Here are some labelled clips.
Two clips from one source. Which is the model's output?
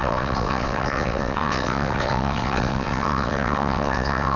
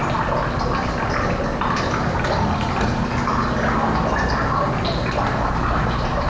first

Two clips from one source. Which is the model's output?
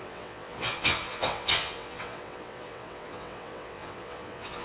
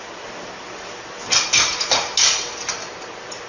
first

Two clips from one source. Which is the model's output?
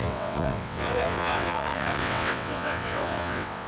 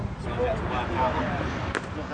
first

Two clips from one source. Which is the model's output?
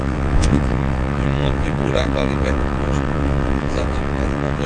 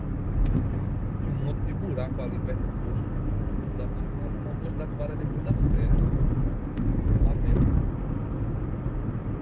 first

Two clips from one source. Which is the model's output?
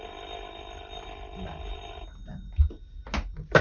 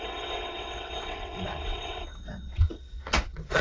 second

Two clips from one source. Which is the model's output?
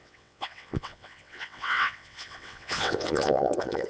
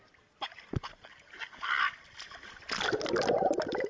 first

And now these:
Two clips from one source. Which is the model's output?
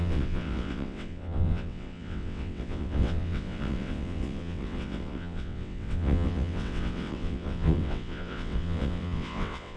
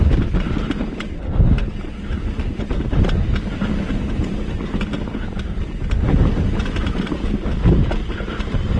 first